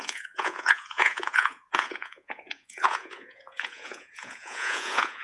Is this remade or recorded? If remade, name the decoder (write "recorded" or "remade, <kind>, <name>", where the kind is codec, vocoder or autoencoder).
remade, vocoder, Vocos